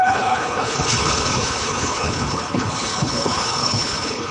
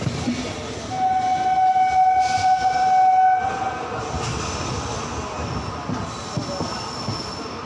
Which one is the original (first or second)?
second